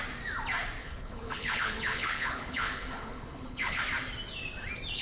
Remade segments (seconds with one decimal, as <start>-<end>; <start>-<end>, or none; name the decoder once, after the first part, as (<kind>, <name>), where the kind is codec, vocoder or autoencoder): 0.8-3.8 (codec, HILCodec)